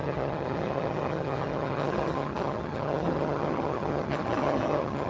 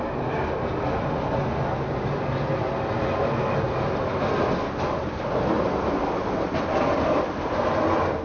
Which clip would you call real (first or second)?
second